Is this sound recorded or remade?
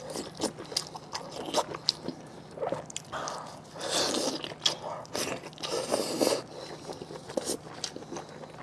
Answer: recorded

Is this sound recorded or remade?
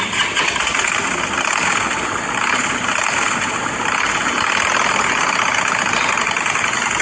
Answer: recorded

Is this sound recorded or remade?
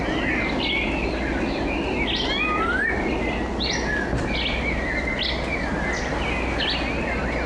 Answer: recorded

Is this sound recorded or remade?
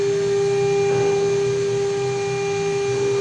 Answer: recorded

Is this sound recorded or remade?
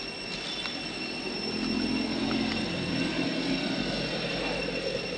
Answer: recorded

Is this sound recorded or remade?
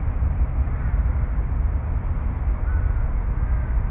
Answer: recorded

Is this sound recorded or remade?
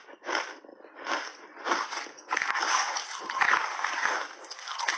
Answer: recorded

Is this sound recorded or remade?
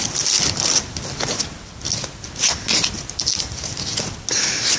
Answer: recorded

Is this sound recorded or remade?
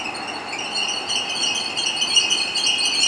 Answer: recorded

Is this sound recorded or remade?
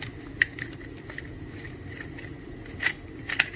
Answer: recorded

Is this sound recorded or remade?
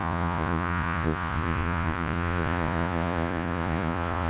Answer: remade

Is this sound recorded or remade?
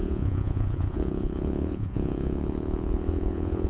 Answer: remade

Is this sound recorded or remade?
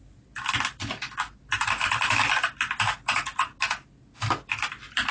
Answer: recorded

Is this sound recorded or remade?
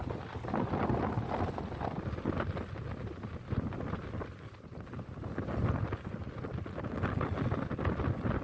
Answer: recorded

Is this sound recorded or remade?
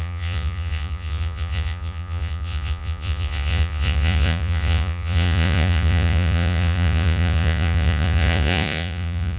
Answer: remade